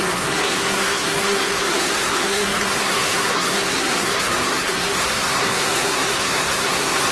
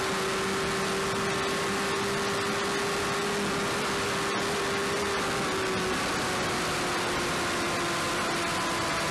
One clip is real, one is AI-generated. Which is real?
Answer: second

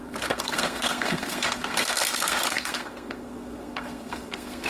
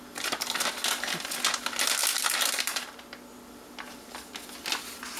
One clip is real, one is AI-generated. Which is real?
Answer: second